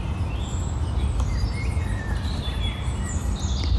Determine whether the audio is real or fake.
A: real